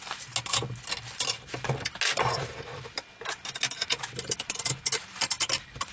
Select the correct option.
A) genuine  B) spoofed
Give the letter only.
A